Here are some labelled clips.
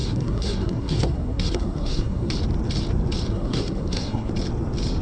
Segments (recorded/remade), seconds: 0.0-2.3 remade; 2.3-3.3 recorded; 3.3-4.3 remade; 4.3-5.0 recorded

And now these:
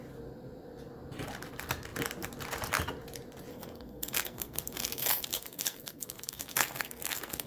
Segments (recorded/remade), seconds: 0.0-3.5 recorded; 3.5-7.5 remade

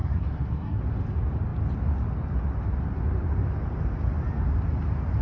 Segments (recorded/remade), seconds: 0.0-0.8 remade; 0.8-5.2 recorded

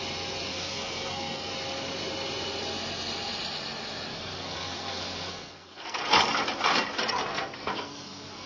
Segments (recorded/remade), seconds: 0.0-0.5 recorded; 0.5-1.5 remade; 1.5-4.1 recorded; 4.1-6.0 remade; 6.0-7.3 recorded; 7.3-8.5 remade

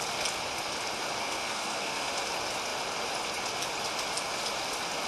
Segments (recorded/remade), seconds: 0.0-1.2 recorded; 1.2-2.1 remade; 2.1-5.1 recorded

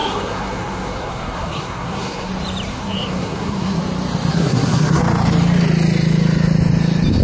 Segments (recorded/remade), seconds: 0.0-2.3 remade; 2.3-2.7 recorded; 2.7-3.8 remade; 3.8-4.3 recorded; 4.3-5.0 remade; 5.0-7.2 recorded